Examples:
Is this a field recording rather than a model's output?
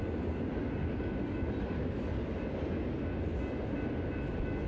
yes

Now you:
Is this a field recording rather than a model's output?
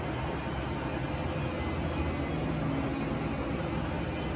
yes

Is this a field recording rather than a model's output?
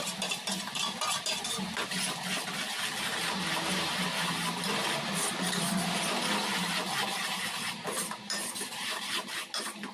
yes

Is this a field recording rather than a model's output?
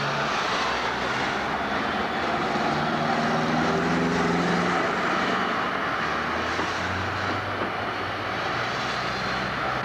yes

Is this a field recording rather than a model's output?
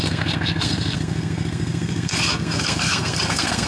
no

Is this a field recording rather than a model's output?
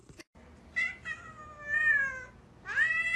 yes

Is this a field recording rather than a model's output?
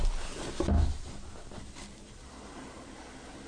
yes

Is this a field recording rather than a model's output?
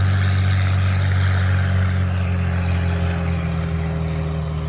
yes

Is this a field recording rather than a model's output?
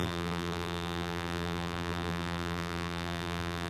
no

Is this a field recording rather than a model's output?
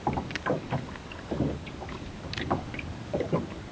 no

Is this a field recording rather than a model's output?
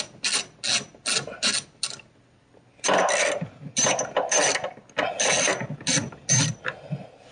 yes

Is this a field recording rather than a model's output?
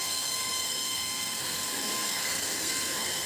no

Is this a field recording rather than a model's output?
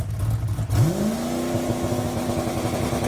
yes